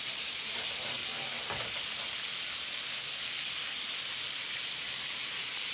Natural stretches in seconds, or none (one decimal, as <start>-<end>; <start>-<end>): 1.0-4.4